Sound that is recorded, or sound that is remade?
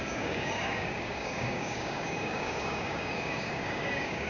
remade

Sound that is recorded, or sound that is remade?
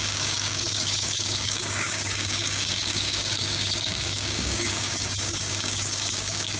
remade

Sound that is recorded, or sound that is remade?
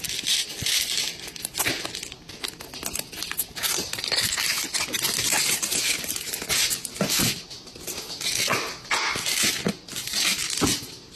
recorded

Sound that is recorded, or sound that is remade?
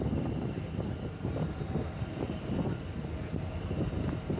recorded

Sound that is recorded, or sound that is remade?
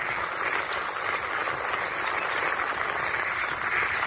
recorded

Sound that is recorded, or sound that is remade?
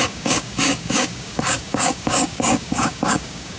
remade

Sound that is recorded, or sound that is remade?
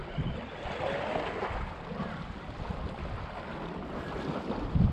recorded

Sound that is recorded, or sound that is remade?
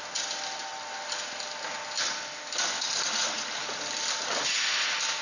recorded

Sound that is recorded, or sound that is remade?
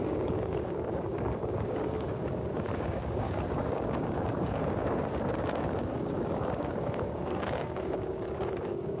remade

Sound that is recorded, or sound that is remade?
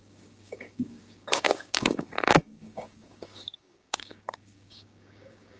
remade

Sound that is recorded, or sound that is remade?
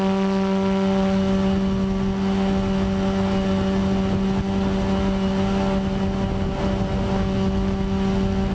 recorded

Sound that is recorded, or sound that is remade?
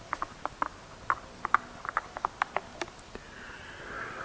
recorded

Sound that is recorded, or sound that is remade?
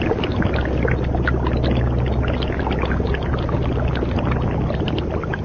recorded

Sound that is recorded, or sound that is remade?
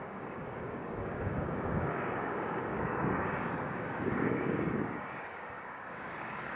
remade